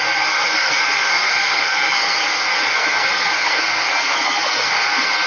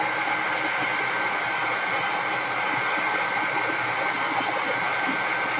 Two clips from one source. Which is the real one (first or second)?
second